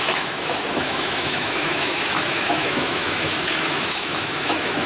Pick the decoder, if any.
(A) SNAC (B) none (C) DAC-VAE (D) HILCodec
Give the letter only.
C